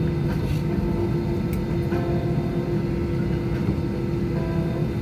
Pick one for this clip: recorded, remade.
recorded